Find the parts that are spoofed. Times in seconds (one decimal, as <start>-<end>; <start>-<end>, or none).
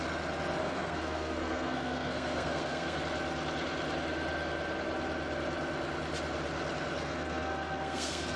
0.6-3.0; 7.0-8.4